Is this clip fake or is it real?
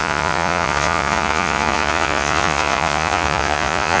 fake